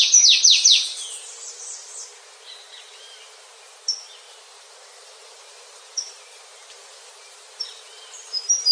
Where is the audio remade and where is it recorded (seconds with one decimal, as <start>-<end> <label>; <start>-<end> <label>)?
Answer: 0.0-8.7 remade